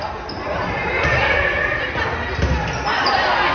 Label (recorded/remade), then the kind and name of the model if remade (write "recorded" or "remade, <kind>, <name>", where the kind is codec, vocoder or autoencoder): recorded